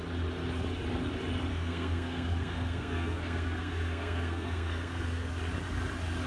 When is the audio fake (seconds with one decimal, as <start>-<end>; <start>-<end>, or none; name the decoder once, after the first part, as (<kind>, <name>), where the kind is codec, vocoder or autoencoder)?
1.5-5.3 (codec, SNAC)